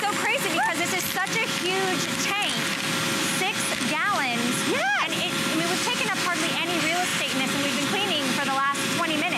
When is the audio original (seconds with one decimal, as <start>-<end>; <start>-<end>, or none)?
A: 0.0-9.4